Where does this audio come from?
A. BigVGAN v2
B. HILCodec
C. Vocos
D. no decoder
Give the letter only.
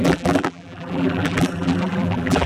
A